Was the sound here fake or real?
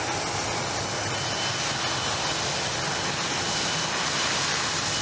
real